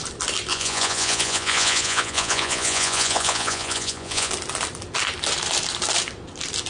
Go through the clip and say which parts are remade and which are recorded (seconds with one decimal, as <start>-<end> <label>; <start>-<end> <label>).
0.0-0.5 recorded; 0.5-4.3 remade; 4.3-6.7 recorded